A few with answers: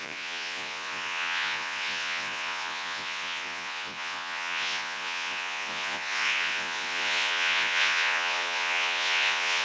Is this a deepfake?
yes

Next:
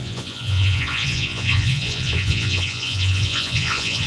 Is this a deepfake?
yes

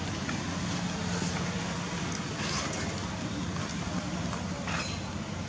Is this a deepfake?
no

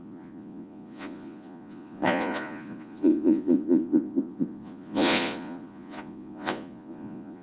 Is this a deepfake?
yes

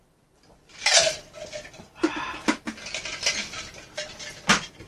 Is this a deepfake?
no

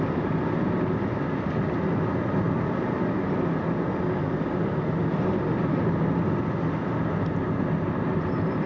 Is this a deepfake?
no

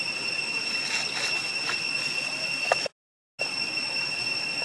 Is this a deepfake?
no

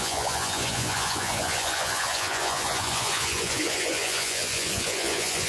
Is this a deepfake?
yes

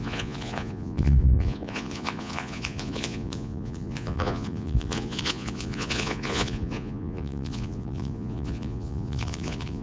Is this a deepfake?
yes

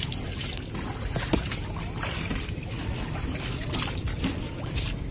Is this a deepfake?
no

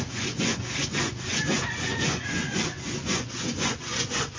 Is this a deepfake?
yes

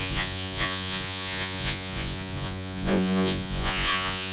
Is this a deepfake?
yes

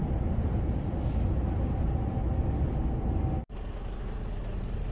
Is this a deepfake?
no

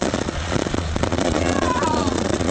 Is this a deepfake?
yes